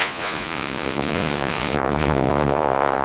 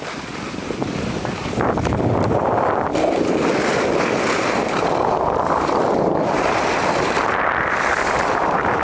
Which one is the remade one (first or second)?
first